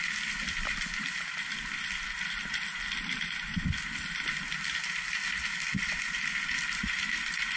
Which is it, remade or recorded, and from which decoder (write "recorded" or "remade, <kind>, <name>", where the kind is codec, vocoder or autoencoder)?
recorded